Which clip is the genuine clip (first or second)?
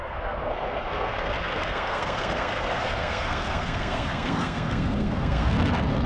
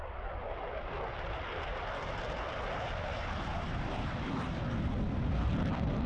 second